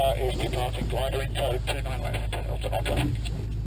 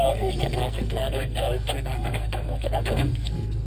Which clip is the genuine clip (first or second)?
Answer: first